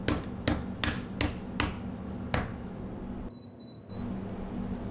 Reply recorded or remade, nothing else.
recorded